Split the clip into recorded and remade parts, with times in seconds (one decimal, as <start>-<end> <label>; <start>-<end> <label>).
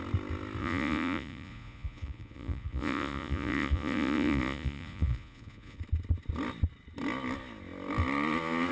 0.0-0.6 recorded; 0.6-5.8 remade; 5.8-8.7 recorded